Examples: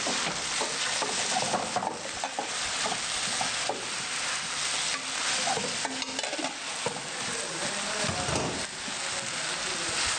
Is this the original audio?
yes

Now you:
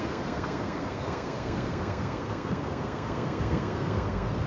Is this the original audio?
no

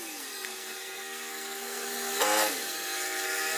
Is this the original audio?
no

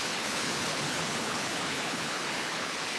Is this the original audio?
no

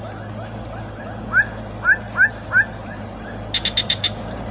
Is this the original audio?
yes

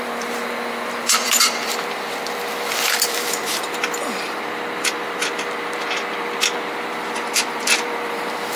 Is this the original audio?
no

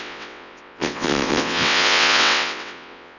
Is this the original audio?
no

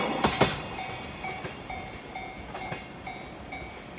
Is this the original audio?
yes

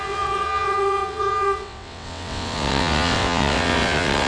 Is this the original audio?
no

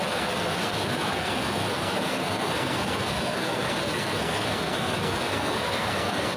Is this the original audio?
no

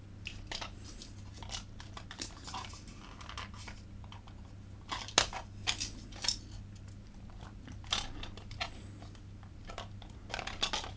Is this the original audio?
yes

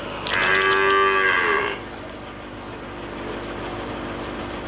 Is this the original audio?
yes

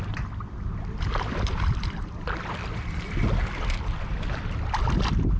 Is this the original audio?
yes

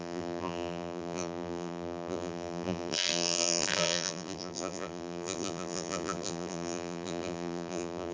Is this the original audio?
no